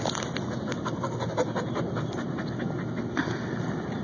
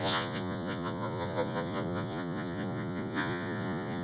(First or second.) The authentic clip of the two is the first